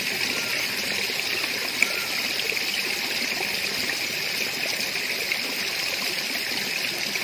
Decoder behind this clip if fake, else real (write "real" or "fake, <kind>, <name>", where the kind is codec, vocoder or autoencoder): real